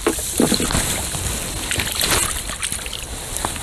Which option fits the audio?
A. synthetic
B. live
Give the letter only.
B